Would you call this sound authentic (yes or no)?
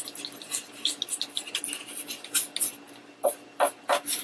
yes